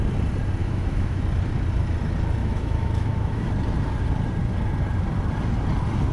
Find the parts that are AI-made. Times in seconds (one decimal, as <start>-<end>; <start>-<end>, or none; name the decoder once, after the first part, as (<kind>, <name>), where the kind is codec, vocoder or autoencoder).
0.6-1.2 (autoencoder, DAC-VAE); 2.4-3.5